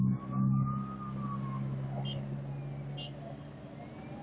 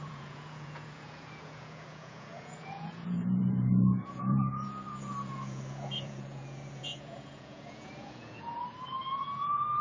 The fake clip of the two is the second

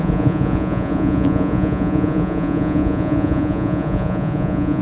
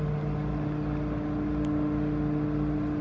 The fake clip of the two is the first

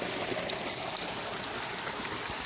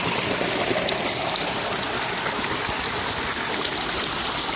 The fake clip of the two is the second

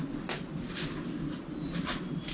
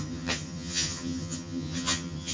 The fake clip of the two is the second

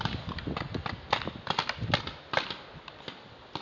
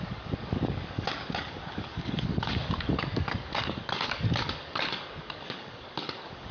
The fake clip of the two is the second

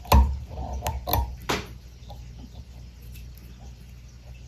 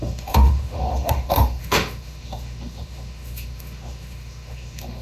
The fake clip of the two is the second